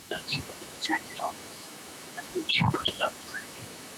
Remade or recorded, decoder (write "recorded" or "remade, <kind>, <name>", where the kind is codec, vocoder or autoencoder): remade, autoencoder, DAC-VAE